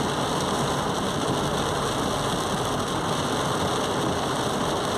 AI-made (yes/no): no